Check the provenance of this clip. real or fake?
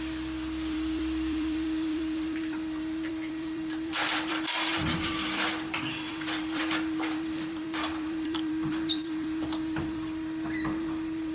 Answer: fake